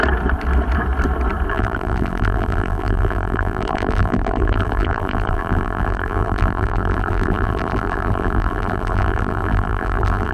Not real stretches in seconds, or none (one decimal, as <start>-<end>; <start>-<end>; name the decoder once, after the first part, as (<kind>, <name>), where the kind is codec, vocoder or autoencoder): 1.5-10.3 (vocoder, BigVGAN v2)